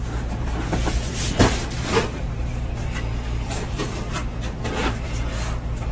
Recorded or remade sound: remade